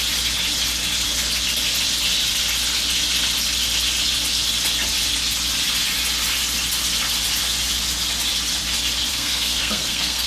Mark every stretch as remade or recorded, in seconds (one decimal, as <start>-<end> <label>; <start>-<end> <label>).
0.0-9.1 recorded; 9.1-10.3 remade